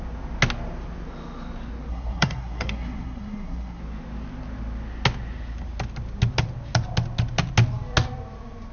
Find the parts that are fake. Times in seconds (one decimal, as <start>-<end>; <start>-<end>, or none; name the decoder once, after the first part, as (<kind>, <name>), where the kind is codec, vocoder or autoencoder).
1.9-3.8 (codec, SNAC)